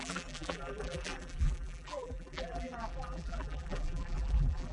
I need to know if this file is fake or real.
fake